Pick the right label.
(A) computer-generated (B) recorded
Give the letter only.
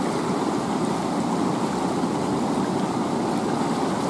B